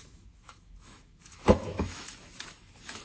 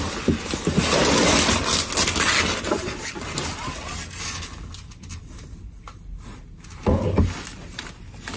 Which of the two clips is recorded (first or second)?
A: second